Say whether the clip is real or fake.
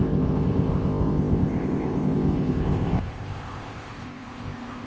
fake